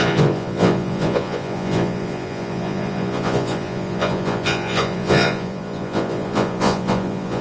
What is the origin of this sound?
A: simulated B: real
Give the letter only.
A